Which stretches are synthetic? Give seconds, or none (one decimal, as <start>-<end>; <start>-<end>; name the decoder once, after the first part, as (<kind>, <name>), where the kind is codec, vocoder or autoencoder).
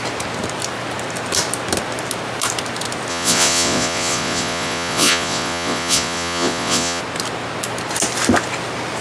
3.1-7.0 (vocoder, Vocos)